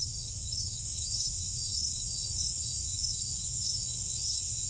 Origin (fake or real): fake